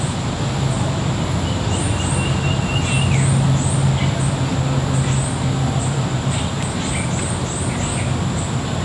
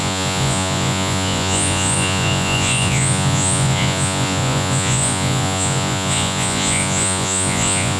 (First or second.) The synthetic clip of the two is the second